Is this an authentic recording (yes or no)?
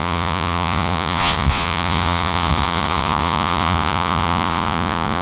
no